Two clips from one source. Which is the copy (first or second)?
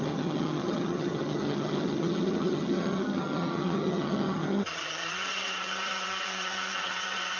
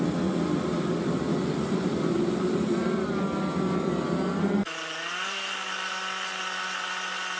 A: first